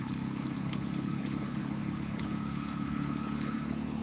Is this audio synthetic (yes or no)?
yes